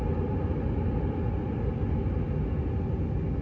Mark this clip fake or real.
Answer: real